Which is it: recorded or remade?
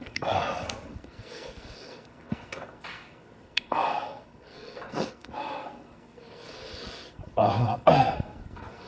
remade